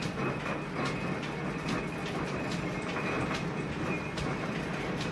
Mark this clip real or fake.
real